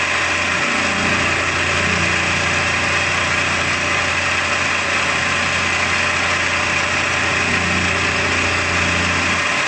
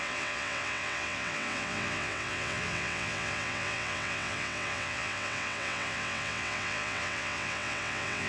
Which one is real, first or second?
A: first